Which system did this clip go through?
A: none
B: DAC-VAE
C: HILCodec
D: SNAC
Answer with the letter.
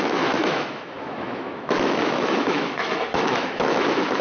B